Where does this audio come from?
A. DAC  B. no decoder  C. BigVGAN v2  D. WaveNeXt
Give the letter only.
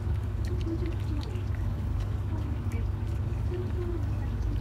A